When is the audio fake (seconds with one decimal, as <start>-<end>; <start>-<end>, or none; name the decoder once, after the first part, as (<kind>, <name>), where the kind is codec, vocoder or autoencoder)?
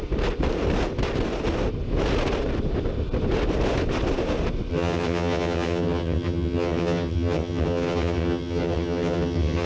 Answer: 4.7-9.7 (vocoder, HiFi-GAN)